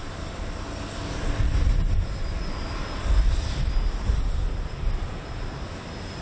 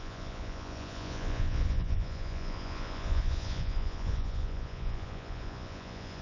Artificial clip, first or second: second